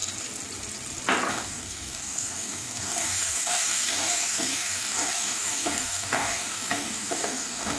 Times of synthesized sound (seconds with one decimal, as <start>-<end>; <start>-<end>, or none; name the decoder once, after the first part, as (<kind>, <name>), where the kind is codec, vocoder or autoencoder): 1.3-7.8 (codec, DAC)